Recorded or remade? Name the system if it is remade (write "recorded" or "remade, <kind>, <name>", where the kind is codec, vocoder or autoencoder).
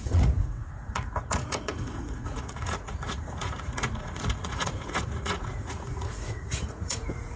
remade, vocoder, Vocos